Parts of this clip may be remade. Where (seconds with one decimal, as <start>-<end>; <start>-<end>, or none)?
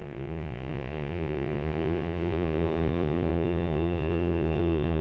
0.0-5.0